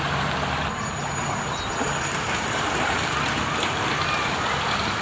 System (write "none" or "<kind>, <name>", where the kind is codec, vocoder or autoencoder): none